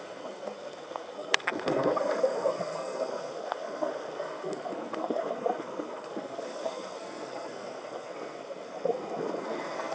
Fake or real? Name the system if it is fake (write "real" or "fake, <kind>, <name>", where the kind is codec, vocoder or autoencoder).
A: fake, codec, SNAC